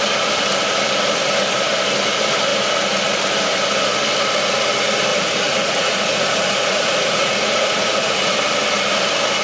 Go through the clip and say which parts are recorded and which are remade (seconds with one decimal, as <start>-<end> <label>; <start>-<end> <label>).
0.0-5.1 recorded; 5.1-8.3 remade; 8.3-9.4 recorded